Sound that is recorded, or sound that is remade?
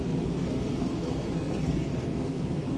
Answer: remade